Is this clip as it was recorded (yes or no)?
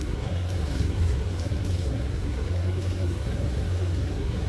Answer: no